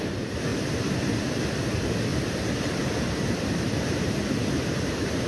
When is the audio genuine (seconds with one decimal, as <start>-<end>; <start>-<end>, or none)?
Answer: 0.5-1.5